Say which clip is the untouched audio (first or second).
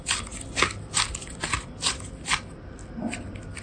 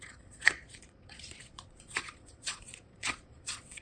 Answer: first